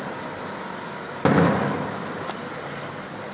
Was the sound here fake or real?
real